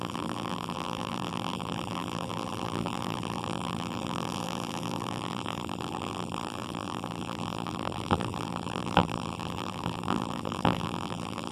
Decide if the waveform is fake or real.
fake